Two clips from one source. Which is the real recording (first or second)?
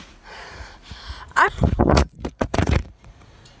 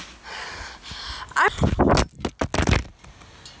second